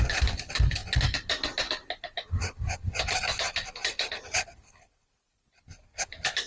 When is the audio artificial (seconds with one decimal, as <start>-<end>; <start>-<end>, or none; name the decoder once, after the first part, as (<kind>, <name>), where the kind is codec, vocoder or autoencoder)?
0.0-0.8 (vocoder, BigVGAN v2); 4.4-6.5